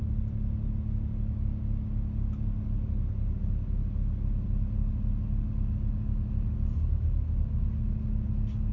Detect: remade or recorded recorded